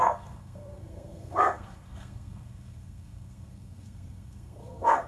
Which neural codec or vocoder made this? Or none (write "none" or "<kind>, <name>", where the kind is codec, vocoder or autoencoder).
codec, SNAC